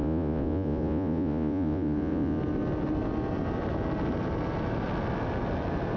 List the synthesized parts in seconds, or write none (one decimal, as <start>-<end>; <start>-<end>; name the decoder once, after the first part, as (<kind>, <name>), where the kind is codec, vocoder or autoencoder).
0.0-2.4 (vocoder, Vocos)